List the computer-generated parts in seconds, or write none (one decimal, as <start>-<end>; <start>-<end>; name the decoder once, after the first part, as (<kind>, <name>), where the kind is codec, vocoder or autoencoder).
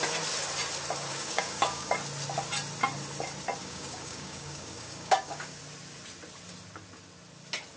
1.1-1.9 (codec, DAC); 3.6-5.6